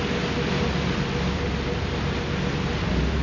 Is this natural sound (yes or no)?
yes